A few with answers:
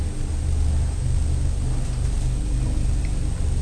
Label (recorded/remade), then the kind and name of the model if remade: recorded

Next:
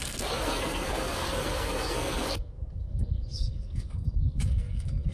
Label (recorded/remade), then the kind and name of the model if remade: remade, codec, SNAC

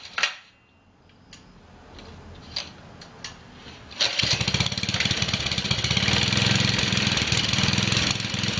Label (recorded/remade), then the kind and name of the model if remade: recorded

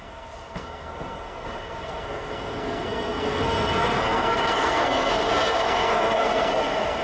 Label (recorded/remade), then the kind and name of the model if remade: remade, codec, SNAC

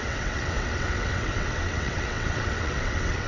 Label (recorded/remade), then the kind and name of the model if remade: remade, vocoder, WaveNeXt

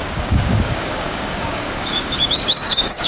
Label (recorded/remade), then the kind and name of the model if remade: remade, codec, DAC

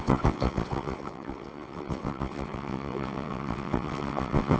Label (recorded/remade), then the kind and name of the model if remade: remade, vocoder, WaveNeXt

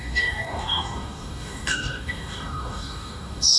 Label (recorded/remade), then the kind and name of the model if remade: remade, codec, DAC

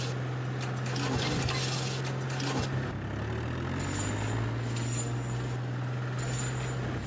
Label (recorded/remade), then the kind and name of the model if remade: recorded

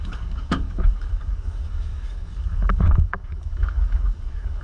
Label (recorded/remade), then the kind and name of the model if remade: remade, codec, DAC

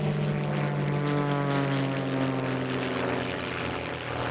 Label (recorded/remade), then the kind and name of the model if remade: recorded